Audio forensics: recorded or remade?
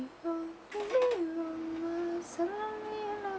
recorded